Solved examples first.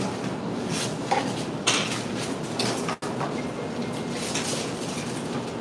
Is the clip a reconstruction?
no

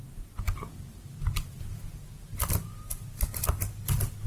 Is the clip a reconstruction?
no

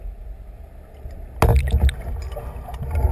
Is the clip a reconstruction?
no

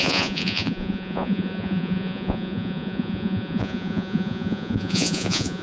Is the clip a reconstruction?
yes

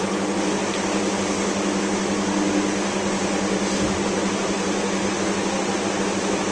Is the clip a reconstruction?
no